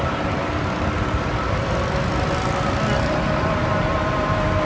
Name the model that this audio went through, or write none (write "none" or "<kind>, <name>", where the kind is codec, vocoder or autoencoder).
none